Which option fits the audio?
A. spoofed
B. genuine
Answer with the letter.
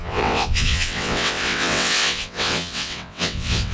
A